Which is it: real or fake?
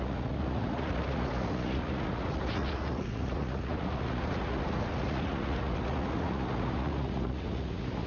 fake